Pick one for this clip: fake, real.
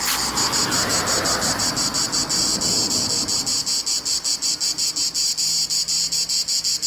real